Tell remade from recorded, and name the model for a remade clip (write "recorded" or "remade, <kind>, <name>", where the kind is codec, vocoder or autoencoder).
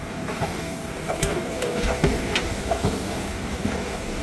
remade, codec, DAC